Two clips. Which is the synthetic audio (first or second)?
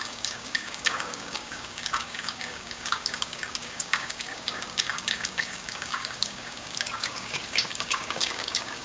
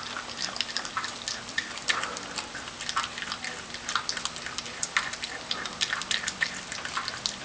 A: first